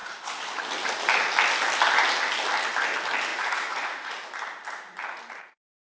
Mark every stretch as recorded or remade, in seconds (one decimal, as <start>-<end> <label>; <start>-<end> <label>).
0.0-3.3 recorded; 3.3-4.1 remade; 4.1-5.9 recorded